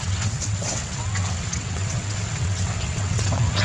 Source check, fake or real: fake